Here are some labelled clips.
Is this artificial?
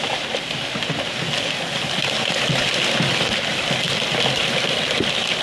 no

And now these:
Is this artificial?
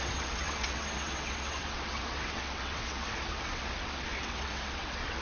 yes